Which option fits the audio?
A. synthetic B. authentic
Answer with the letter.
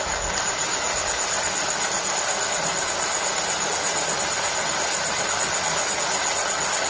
B